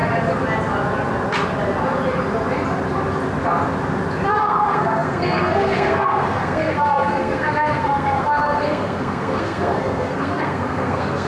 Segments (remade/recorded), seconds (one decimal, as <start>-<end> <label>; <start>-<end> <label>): 0.0-4.3 recorded; 4.3-11.3 remade